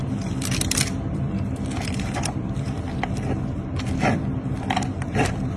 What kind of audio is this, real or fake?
fake